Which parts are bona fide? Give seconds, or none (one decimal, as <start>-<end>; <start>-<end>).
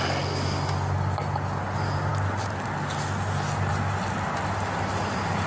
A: 0.0-5.5